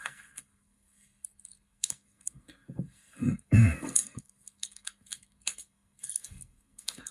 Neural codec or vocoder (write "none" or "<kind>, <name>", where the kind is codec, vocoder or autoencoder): codec, SNAC